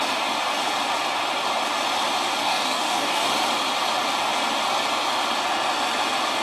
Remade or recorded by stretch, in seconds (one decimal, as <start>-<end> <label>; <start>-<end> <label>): 0.0-2.4 recorded; 2.4-3.3 remade; 3.3-6.4 recorded